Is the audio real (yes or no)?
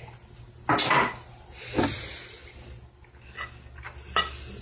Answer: yes